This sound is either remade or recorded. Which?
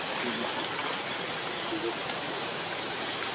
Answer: recorded